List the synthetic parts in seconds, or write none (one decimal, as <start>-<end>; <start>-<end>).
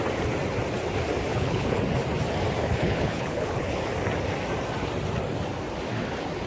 1.3-1.8; 2.6-3.8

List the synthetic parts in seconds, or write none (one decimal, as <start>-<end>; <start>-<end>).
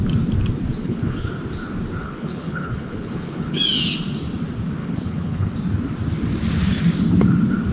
0.8-1.3; 2.0-3.6; 4.8-5.5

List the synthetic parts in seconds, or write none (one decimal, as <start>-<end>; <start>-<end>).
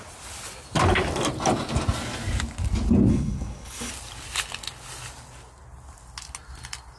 3.1-3.9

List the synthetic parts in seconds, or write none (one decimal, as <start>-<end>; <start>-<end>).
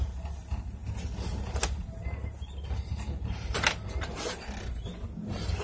none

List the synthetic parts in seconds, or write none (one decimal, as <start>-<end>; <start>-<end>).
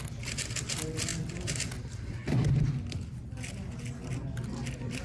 none